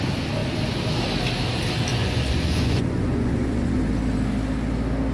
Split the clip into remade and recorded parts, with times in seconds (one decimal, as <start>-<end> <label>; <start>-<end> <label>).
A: 0.0-1.9 recorded; 1.9-3.8 remade; 3.8-5.1 recorded